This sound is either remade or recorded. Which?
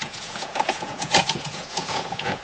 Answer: remade